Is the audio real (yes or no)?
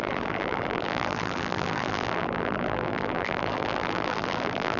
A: no